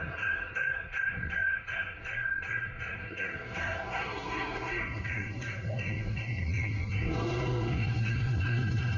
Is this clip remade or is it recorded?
remade